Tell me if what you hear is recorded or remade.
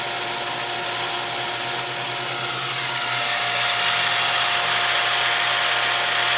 recorded